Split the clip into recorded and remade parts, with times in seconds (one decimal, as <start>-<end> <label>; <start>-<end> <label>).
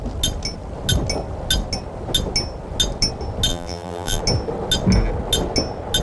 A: 0.0-3.5 recorded; 3.5-4.2 remade; 4.2-6.0 recorded